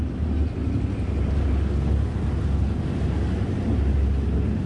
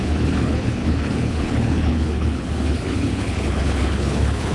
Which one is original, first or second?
first